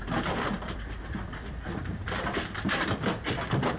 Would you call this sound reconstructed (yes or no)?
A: yes